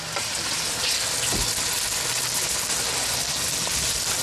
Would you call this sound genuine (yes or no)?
yes